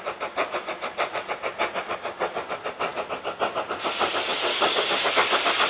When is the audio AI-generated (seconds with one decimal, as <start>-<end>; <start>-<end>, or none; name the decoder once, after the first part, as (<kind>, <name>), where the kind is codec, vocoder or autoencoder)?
4.5-5.1 (codec, DAC)

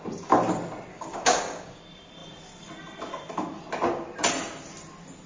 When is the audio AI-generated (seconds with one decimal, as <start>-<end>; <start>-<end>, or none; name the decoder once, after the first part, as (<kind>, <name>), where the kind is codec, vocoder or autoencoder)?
0.9-1.8 (codec, DAC)

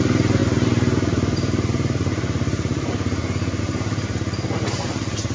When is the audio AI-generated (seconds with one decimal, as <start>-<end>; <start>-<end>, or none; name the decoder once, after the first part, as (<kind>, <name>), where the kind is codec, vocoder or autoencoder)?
none

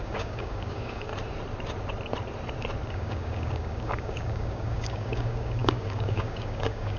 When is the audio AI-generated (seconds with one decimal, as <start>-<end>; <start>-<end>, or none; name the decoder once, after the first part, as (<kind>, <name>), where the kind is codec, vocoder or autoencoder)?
0.0-1.1 (codec, DAC); 2.9-7.0

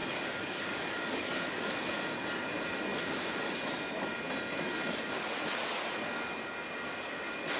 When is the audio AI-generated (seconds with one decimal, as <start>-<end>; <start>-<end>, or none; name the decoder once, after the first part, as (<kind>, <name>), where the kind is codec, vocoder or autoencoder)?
0.0-1.7 (codec, DAC)